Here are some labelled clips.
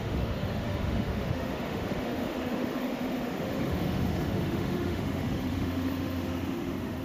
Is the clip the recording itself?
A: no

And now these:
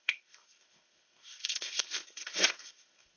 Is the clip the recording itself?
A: no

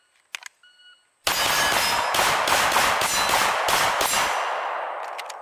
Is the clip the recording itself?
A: yes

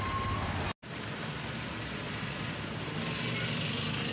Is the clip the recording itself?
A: yes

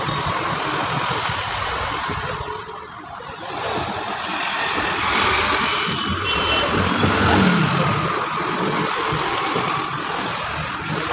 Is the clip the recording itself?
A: yes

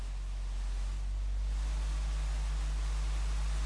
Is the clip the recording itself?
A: yes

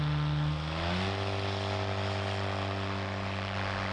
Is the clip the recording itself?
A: yes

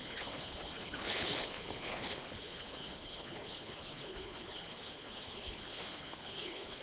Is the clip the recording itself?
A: no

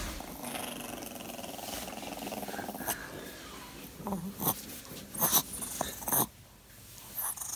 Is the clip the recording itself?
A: yes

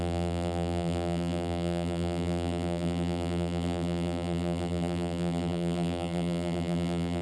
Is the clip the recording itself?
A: no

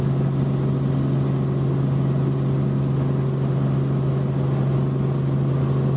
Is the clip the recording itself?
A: yes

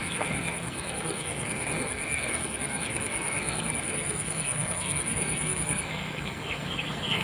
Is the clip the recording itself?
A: no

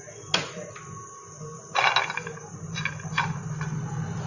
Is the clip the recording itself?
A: yes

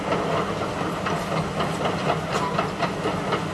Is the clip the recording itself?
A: yes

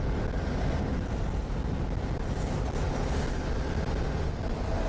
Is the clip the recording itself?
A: yes